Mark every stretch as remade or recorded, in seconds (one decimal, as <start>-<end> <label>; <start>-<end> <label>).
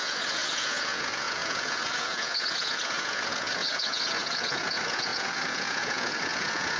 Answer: 0.0-6.8 remade